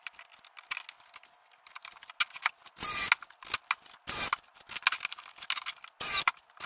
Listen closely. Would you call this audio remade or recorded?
recorded